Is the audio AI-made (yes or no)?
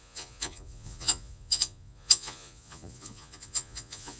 yes